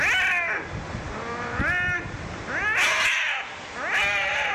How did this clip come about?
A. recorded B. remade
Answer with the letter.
A